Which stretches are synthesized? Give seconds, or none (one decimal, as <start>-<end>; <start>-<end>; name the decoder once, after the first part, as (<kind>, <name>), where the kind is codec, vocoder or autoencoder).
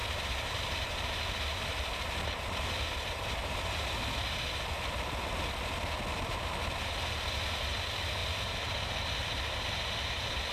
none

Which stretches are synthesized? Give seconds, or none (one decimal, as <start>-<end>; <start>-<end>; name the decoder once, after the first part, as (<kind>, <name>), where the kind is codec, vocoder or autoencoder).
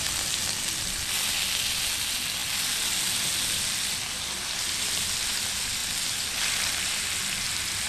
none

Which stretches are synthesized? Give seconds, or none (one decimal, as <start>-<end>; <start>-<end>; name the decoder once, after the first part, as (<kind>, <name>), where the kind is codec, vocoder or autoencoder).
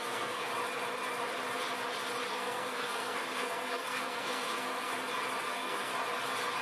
0.0-0.5 (codec, SNAC); 2.3-4.9; 5.4-5.9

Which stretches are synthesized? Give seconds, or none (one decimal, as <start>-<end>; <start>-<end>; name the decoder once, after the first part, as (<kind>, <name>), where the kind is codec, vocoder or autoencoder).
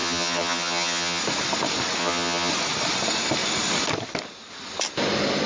0.0-1.2 (vocoder, HiFi-GAN); 2.0-2.5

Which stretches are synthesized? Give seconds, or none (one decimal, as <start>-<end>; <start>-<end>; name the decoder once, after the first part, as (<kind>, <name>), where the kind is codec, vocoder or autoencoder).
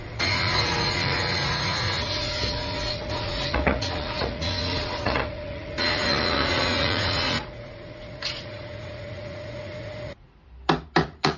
0.0-10.4 (vocoder, Vocos); 11.0-11.4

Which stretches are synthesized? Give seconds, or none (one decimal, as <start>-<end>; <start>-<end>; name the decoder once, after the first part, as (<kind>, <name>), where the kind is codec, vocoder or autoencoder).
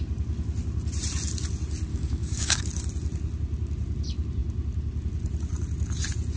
1.9-2.6 (codec, DAC)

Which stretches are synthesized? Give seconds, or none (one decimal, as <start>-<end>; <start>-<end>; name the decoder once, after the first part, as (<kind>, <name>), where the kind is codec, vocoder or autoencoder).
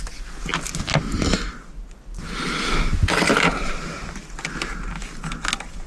none